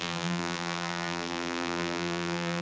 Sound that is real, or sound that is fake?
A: fake